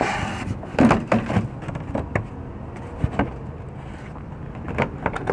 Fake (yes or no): no